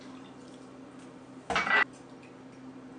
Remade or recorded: recorded